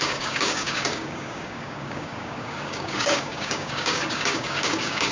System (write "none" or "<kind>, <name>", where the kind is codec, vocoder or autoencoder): codec, DAC